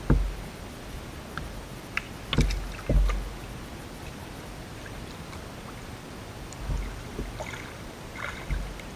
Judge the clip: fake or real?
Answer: real